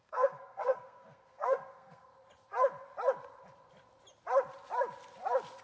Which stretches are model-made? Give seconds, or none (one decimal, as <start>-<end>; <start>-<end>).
0.0-2.1